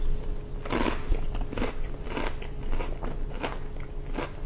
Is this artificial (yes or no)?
no